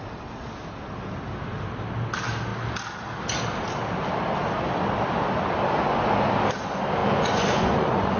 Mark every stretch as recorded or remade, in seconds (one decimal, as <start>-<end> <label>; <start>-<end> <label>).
0.0-7.0 recorded; 7.0-8.2 remade